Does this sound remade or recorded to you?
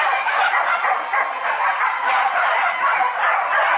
recorded